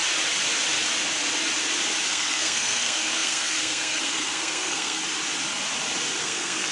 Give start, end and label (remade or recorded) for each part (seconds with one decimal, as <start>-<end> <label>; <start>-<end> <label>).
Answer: 0.0-2.1 recorded; 2.1-5.0 remade; 5.0-6.2 recorded; 6.2-6.7 remade